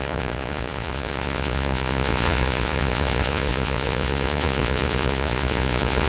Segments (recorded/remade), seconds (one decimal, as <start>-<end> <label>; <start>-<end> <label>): 0.0-6.1 remade